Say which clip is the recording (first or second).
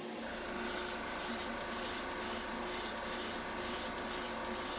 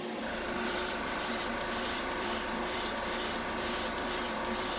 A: first